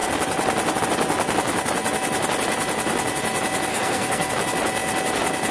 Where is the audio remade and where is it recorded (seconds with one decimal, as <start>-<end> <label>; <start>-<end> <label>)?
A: 0.0-3.7 recorded; 3.7-4.3 remade; 4.3-5.5 recorded

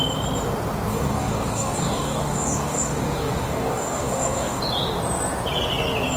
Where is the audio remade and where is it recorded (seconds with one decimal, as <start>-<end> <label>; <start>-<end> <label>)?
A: 0.0-0.9 recorded; 0.9-4.6 remade; 4.6-6.2 recorded

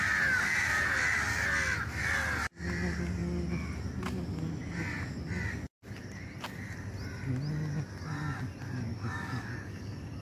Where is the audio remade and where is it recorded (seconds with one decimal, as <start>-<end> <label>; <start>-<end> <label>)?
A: 0.0-8.9 recorded; 8.9-10.2 remade